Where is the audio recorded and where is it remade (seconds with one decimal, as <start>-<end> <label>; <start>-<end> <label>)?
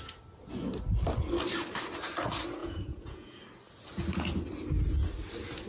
0.0-2.6 recorded; 2.6-3.4 remade; 3.4-5.7 recorded